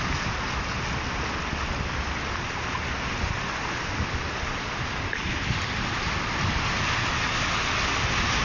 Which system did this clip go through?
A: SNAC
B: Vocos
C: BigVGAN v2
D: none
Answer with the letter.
D